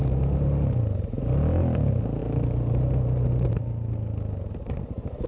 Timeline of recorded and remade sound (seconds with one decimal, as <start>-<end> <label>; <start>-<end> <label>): 0.0-5.3 recorded